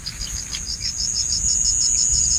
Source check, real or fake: real